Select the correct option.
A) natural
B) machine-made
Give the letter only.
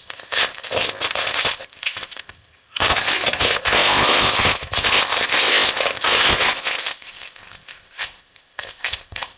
B